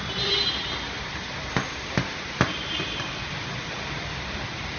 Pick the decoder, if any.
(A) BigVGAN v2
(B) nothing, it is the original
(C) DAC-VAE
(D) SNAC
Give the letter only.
A